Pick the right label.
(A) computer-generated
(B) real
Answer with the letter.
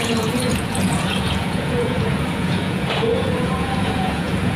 A